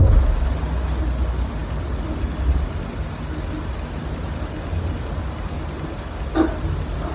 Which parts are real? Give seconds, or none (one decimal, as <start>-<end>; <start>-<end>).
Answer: 0.0-7.1